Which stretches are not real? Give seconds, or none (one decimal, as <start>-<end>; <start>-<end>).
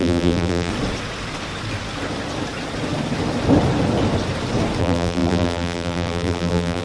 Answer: 0.0-0.7; 4.8-6.8